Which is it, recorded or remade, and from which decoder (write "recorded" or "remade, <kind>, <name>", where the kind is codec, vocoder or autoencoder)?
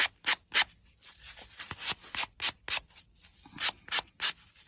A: recorded